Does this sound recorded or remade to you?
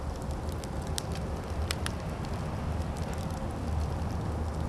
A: remade